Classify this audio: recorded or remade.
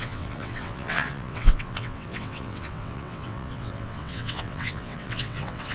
remade